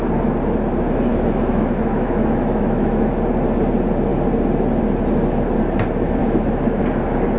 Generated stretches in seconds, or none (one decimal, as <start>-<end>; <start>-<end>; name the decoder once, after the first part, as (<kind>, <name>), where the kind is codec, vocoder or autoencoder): 1.1-3.1 (autoencoder, DAC-VAE); 6.2-6.8